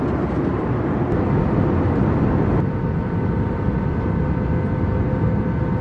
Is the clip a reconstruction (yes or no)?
no